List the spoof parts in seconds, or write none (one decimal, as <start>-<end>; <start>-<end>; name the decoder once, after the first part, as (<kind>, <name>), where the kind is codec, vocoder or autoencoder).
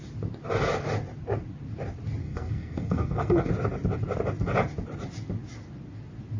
2.2-3.5 (codec, SNAC)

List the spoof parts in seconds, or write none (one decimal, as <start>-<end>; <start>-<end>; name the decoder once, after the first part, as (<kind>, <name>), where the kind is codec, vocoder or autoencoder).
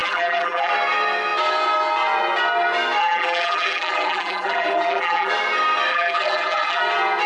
0.0-0.7 (vocoder, BigVGAN v2); 3.0-5.3; 5.9-6.8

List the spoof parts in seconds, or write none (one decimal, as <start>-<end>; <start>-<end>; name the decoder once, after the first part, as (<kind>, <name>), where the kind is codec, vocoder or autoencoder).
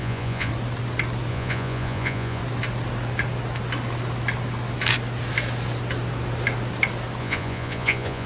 0.0-0.5 (vocoder, Vocos); 1.3-2.4; 7.2-8.3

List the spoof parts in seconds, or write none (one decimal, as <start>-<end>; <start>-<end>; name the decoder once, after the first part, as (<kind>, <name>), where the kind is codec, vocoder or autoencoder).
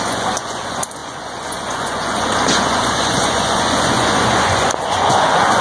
0.0-5.6 (vocoder, Vocos)